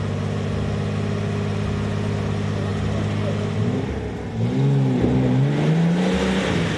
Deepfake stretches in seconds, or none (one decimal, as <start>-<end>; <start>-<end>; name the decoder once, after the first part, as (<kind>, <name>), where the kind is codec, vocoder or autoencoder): none